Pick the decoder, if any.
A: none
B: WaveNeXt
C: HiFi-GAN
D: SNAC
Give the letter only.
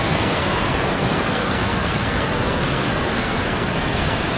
D